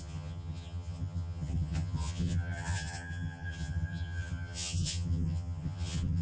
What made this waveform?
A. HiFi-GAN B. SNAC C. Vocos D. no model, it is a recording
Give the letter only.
A